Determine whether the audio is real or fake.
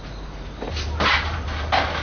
fake